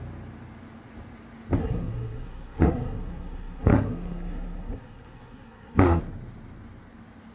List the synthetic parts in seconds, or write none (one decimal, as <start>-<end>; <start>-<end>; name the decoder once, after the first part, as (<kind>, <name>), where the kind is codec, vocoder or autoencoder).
1.6-6.0 (codec, SNAC)